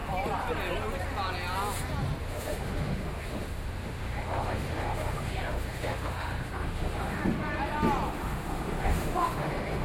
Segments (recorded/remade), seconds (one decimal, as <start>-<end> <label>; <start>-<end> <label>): 0.0-2.2 recorded; 2.2-7.2 remade; 7.2-8.1 recorded; 8.1-9.8 remade